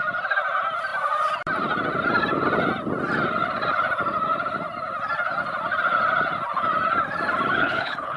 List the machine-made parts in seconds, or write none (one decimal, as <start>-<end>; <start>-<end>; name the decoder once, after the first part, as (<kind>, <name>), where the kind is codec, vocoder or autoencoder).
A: 7.6-8.2 (codec, HILCodec)